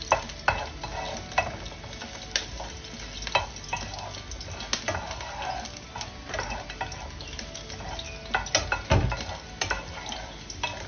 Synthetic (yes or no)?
no